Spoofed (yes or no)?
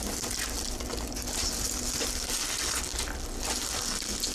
no